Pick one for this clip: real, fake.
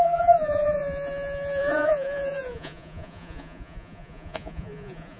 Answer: fake